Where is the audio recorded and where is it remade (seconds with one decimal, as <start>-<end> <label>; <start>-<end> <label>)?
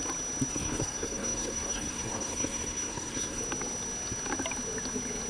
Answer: 0.0-0.5 recorded; 0.5-3.4 remade; 3.4-5.3 recorded